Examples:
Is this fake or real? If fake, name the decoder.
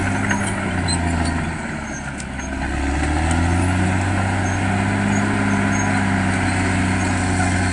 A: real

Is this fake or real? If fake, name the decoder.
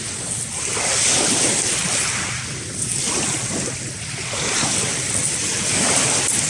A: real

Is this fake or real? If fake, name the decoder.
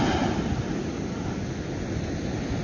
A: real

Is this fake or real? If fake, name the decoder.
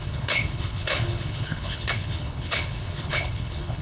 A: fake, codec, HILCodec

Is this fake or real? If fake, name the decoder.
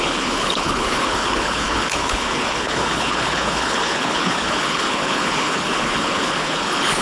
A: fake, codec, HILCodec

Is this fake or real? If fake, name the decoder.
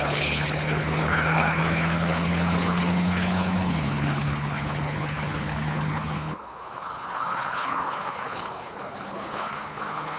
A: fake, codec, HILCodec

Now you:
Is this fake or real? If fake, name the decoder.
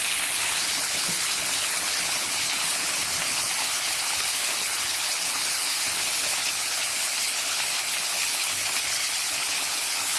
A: fake, codec, HILCodec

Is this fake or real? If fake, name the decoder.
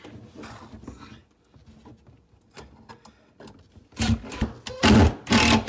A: real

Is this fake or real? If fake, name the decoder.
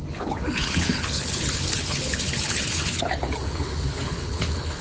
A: fake, codec, HILCodec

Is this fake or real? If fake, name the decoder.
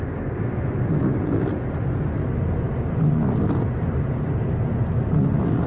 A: real